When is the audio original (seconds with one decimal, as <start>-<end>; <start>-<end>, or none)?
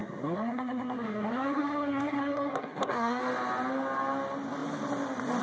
3.2-5.4